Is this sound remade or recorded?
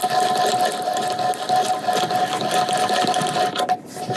recorded